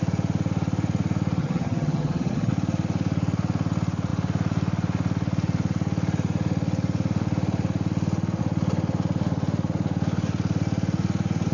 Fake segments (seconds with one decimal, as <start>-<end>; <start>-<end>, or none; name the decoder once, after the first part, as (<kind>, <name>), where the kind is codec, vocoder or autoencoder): 1.4-2.5 (vocoder, HiFi-GAN)